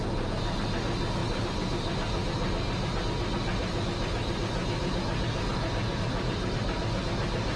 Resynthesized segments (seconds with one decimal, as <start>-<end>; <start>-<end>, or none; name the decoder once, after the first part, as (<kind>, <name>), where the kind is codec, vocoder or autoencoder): none